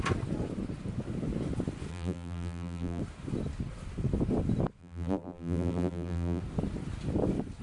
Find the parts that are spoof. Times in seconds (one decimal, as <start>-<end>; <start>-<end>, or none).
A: 1.9-3.0; 4.8-6.4